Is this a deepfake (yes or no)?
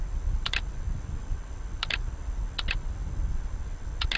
no